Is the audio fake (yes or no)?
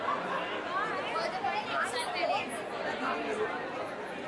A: no